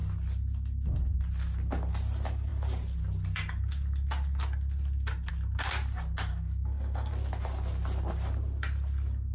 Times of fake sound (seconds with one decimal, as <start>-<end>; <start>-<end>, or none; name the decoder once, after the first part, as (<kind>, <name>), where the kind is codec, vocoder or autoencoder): 6.3-7.1 (codec, SNAC)